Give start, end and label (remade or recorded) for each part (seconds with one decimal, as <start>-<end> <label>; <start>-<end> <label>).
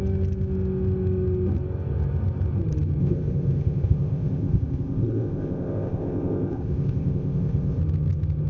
0.0-3.0 recorded; 3.0-7.8 remade; 7.8-8.5 recorded